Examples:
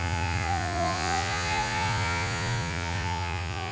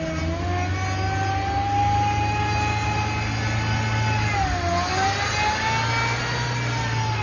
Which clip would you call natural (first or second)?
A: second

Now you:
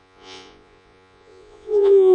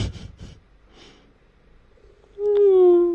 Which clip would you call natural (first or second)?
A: second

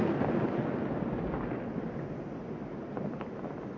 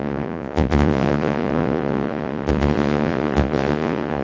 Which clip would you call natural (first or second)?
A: first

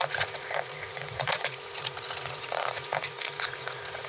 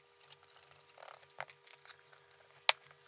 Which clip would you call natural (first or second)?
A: second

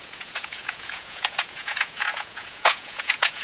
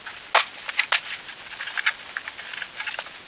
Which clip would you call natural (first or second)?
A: second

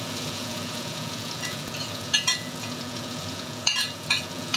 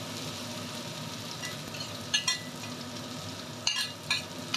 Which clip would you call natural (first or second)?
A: second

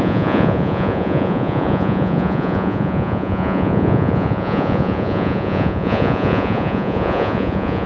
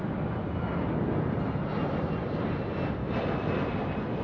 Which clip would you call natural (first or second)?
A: second